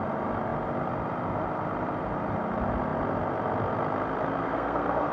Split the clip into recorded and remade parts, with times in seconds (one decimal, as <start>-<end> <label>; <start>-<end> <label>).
0.0-4.4 recorded; 4.4-5.1 remade